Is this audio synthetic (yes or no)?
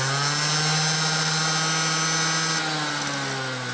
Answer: no